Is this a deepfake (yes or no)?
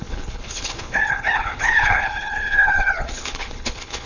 yes